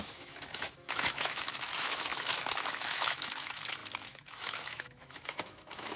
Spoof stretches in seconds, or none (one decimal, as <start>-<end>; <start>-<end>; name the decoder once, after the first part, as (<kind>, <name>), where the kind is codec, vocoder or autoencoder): 0.0-6.0 (autoencoder, DAC-VAE)